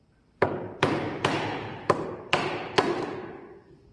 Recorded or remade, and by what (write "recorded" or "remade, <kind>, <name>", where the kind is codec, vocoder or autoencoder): remade, vocoder, BigVGAN v2